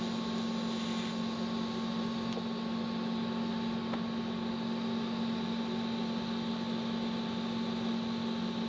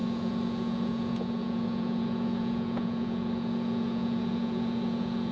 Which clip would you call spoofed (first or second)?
second